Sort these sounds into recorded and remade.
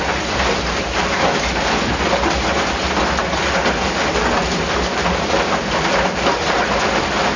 recorded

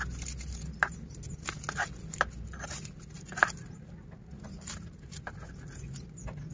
recorded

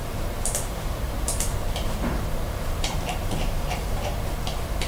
remade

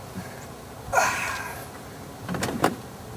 remade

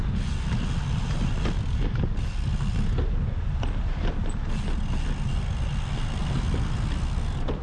recorded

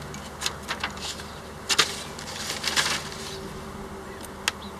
recorded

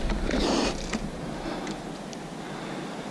recorded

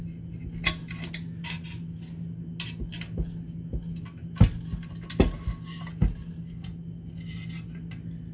recorded